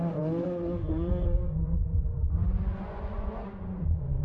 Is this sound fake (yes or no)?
yes